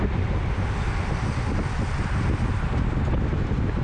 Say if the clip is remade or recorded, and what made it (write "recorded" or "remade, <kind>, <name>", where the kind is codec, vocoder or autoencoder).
recorded